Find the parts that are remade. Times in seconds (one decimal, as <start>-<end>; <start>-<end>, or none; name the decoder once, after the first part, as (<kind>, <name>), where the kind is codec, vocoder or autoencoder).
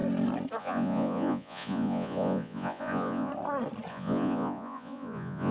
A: 0.6-3.3 (vocoder, Vocos); 3.9-5.5